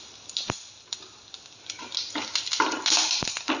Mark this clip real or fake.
real